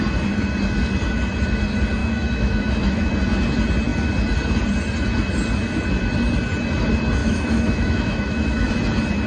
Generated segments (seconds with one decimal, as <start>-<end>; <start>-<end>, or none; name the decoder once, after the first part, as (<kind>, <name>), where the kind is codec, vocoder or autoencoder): 2.0-3.1 (autoencoder, DAC-VAE); 7.2-8.7